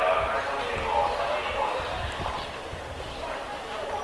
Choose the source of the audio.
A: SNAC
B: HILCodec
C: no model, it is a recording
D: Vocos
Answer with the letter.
C